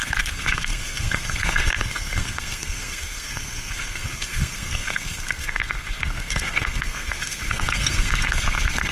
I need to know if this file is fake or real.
fake